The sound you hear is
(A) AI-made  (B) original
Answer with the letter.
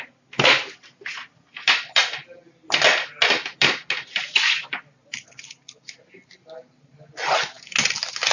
B